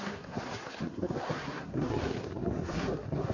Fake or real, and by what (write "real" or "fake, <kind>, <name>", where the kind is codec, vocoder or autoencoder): fake, codec, SNAC